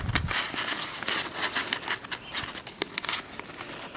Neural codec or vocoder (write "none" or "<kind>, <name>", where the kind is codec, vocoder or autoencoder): none